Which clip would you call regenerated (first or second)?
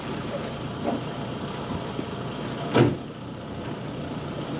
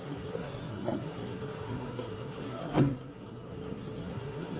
second